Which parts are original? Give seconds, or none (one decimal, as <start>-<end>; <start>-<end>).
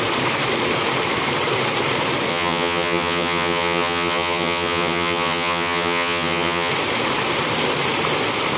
0.0-2.3; 6.7-8.6